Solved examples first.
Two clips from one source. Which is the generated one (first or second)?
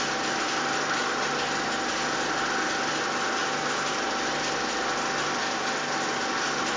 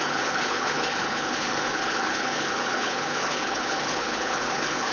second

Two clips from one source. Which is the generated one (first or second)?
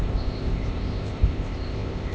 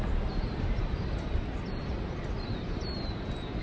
first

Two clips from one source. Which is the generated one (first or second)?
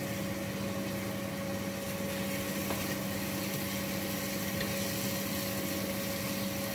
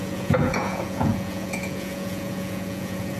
second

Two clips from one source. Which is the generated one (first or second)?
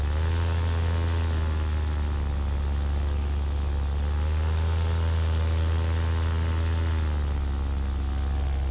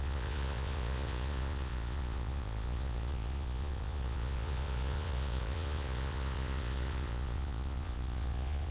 second